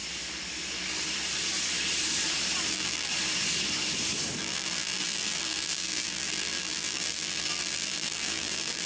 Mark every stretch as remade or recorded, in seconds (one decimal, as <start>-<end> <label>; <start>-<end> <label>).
0.0-2.7 recorded; 2.7-3.1 remade; 3.1-4.4 recorded; 4.4-8.9 remade